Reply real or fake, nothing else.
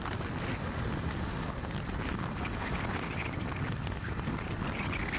real